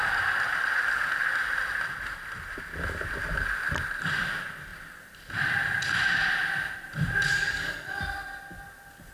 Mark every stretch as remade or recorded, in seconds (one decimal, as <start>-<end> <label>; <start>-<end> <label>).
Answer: 0.0-7.3 recorded; 7.3-8.0 remade; 8.0-9.1 recorded